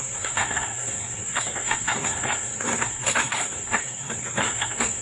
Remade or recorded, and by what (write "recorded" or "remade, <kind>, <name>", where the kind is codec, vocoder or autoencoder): remade, codec, SNAC